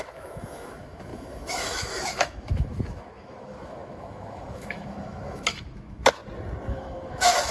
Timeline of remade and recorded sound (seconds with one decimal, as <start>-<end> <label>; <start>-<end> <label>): 0.0-6.2 remade; 6.2-6.7 recorded; 6.7-7.5 remade